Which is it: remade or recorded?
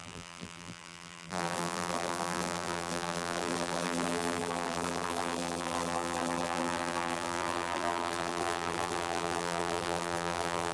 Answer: remade